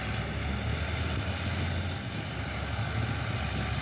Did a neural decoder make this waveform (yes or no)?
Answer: no